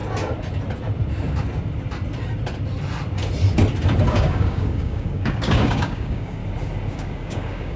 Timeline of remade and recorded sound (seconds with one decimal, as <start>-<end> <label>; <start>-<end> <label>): 0.0-4.1 recorded; 4.1-6.4 remade; 6.4-6.9 recorded; 6.9-7.8 remade

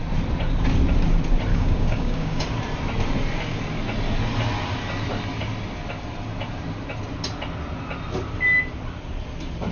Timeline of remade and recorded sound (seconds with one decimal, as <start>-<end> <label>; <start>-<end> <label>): 0.0-1.5 recorded; 1.5-2.4 remade; 2.4-9.7 recorded